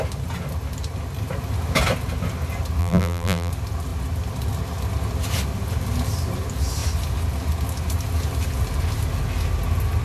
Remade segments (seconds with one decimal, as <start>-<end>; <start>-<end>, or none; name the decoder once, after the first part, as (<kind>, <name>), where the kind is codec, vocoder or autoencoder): 2.8-3.5 (vocoder, BigVGAN v2)